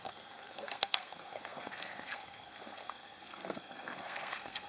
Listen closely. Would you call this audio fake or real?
fake